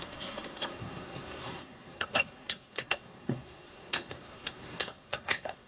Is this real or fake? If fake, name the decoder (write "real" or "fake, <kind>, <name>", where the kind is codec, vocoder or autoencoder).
fake, codec, SNAC